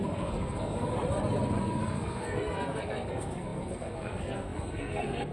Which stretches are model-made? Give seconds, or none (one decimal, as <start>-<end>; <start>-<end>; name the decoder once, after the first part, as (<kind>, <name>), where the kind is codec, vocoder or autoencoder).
0.0-0.9 (codec, SNAC); 1.6-5.3